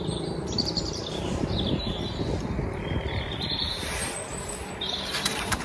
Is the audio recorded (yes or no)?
yes